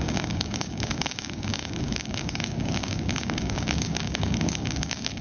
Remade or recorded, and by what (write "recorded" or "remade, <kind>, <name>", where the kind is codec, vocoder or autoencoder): remade, codec, DAC